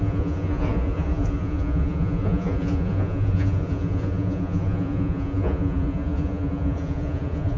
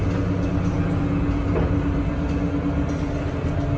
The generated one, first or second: first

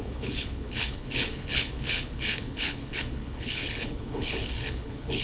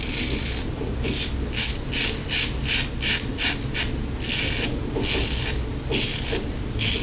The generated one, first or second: first